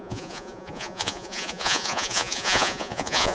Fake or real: fake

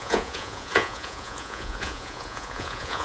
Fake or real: fake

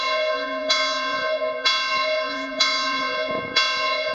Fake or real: fake